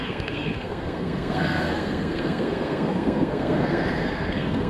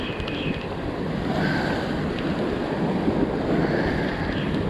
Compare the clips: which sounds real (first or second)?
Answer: second